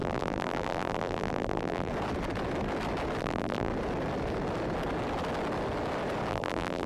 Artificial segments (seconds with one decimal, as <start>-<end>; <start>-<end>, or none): 0.0-1.9; 3.2-3.7; 6.3-6.9